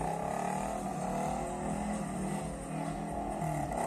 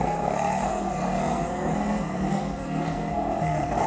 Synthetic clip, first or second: second